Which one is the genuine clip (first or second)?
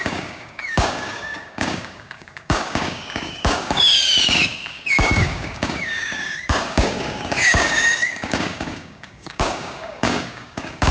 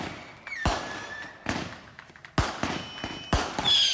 second